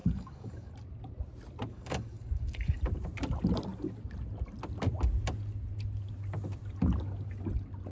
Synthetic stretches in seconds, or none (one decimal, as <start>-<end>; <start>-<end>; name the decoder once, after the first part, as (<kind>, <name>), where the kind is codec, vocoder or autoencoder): 0.0-0.7 (codec, DAC); 1.7-2.8